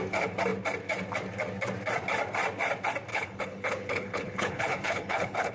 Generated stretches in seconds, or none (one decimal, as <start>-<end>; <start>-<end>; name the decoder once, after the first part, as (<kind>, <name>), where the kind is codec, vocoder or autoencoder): 3.1-5.5 (codec, HILCodec)